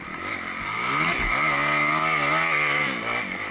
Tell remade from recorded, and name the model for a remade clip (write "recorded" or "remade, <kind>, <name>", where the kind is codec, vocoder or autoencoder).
recorded